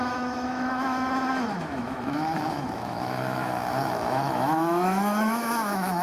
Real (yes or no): no